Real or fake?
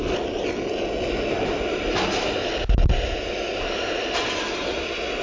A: real